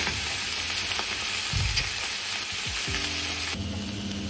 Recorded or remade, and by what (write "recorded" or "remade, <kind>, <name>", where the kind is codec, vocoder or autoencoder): recorded